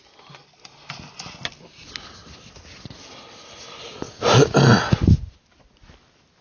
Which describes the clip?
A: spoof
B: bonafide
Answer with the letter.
B